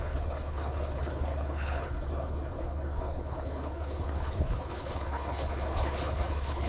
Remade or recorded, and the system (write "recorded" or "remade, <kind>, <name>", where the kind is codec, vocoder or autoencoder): remade, codec, HILCodec